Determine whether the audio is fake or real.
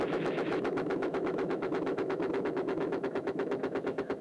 fake